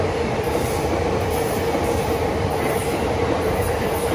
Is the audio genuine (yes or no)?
yes